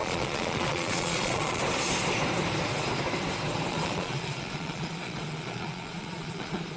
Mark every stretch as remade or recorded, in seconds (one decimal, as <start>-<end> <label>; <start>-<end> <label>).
0.0-1.6 remade; 1.6-3.7 recorded; 3.7-6.8 remade